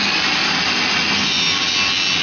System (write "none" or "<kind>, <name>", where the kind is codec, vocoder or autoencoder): none